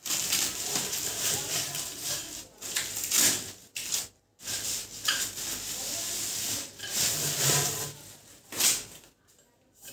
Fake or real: real